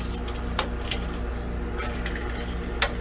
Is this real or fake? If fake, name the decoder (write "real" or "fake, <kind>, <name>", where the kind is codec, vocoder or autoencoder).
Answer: real